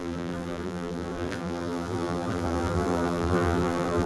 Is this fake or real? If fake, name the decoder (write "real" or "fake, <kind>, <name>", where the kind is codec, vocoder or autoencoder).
fake, vocoder, BigVGAN v2